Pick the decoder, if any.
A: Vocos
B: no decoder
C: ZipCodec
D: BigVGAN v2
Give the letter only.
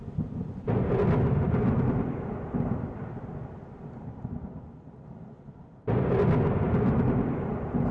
B